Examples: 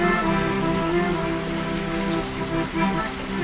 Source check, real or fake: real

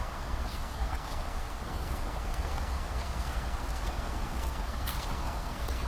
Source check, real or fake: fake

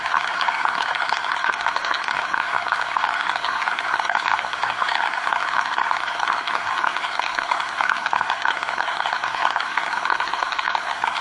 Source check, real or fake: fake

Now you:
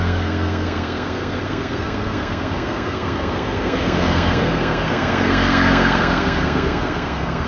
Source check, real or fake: fake